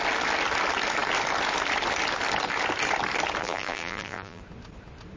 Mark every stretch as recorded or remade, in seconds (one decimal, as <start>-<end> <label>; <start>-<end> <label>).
0.0-3.4 recorded; 3.4-4.4 remade; 4.4-5.2 recorded

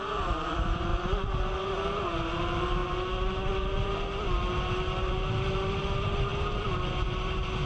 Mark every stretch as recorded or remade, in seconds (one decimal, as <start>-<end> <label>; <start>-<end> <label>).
0.0-0.9 remade; 0.9-1.7 recorded; 1.7-7.7 remade